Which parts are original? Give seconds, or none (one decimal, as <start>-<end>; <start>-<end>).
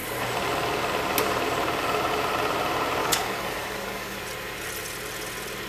0.0-3.0; 4.2-5.7